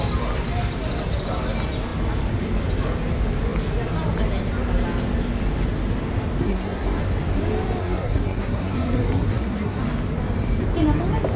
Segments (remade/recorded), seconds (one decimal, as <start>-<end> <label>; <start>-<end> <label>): 0.0-6.4 recorded; 6.4-7.0 remade; 7.0-7.8 recorded; 7.8-9.8 remade; 9.8-11.4 recorded

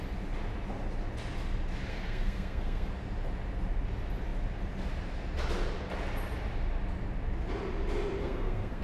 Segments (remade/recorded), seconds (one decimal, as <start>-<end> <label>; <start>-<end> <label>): 0.0-1.9 recorded; 1.9-2.9 remade; 2.9-8.2 recorded; 8.2-8.8 remade

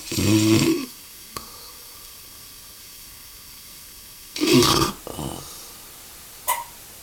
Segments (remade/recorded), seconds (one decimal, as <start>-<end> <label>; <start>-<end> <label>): 0.0-0.7 recorded; 0.7-4.9 remade; 4.9-7.0 recorded

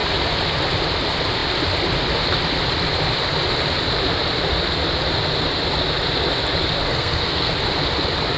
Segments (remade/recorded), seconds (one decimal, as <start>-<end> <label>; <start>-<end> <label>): 0.0-6.9 recorded; 6.9-7.5 remade; 7.5-8.4 recorded

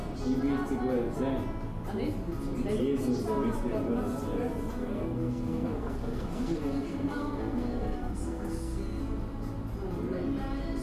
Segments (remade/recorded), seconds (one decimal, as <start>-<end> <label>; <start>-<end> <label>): 0.0-4.8 recorded; 4.8-9.0 remade; 9.0-10.8 recorded